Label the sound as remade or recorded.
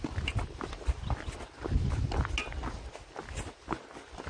recorded